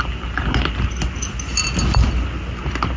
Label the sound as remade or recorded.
recorded